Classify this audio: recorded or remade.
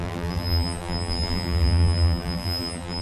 remade